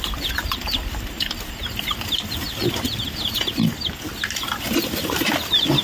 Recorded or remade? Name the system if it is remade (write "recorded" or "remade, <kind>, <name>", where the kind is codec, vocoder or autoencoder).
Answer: recorded